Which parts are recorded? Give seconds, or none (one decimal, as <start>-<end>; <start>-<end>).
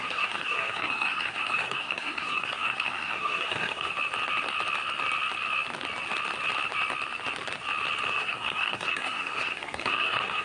3.9-8.1